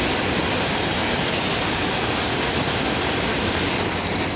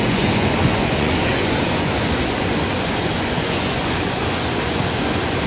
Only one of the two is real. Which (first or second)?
first